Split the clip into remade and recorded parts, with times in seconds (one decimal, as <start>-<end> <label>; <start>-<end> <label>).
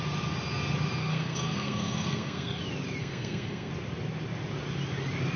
0.0-1.0 recorded; 1.0-2.6 remade; 2.6-3.0 recorded; 3.0-3.7 remade; 3.7-5.4 recorded